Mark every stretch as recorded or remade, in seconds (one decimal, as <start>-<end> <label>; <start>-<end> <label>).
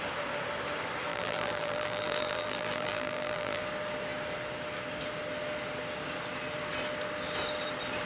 0.0-1.1 recorded; 1.1-3.6 remade; 3.6-8.1 recorded